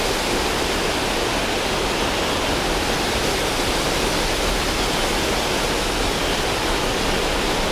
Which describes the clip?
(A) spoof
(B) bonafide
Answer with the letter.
B